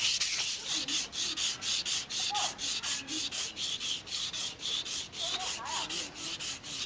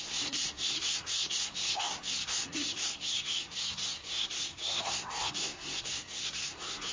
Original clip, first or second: first